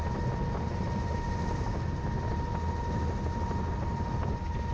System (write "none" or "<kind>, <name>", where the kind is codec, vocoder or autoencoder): none